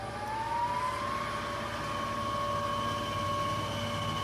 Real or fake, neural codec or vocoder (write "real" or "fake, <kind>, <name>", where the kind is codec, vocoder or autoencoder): real